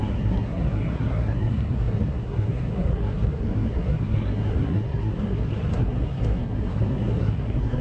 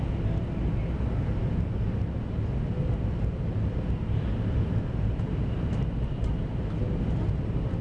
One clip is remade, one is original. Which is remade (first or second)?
first